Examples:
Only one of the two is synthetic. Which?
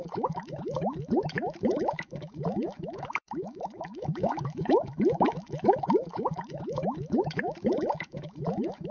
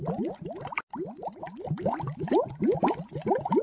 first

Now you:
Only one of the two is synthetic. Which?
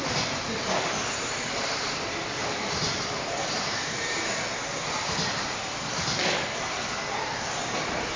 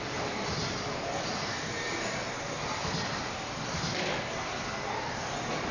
first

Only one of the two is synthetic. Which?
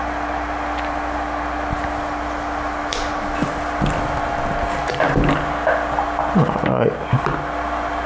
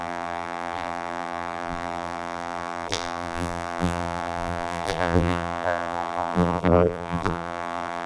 second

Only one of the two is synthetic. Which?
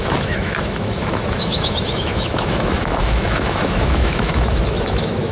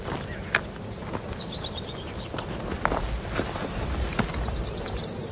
first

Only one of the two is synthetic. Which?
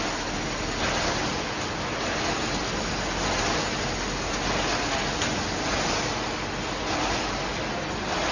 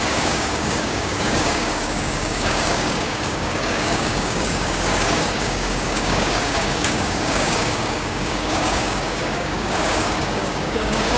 second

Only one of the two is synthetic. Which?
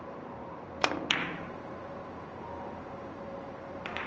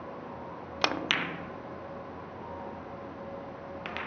first